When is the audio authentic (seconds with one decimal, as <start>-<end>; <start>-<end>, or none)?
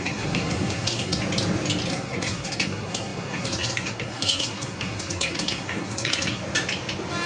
1.2-1.9; 6.4-7.3